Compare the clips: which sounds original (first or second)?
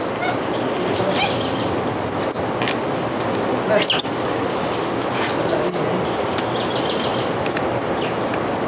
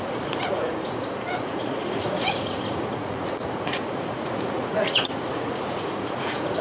first